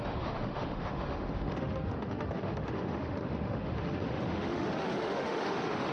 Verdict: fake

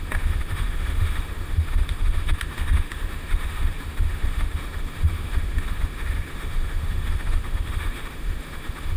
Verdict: fake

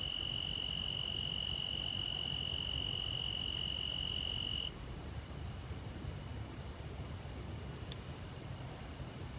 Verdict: real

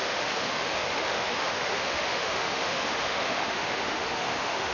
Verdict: fake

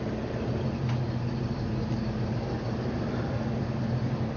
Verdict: real